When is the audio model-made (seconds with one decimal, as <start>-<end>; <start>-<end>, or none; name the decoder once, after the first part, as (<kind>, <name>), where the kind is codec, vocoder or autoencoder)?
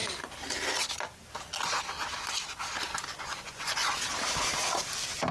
3.2-3.8 (vocoder, Vocos)